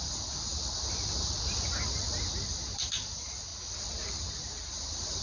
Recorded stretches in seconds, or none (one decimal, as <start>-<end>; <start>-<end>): 0.0-5.2